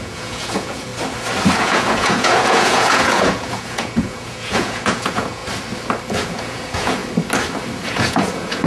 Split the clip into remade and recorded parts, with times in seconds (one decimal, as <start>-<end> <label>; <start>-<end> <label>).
0.0-0.9 remade; 0.9-1.6 recorded; 1.6-5.4 remade; 5.4-6.1 recorded; 6.1-7.0 remade; 7.0-7.8 recorded; 7.8-8.7 remade